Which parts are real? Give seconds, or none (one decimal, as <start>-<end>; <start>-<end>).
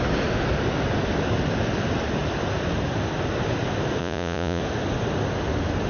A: 0.0-4.0; 4.6-5.9